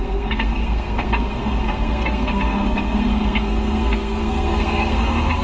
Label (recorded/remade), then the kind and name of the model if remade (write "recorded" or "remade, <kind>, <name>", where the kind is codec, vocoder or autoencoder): remade, codec, SNAC